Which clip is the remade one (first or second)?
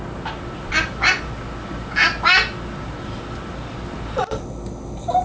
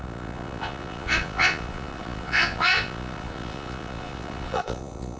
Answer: second